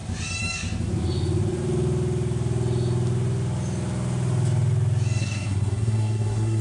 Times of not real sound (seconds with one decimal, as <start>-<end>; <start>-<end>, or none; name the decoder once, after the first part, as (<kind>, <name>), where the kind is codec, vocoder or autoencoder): 5.2-6.6 (codec, SNAC)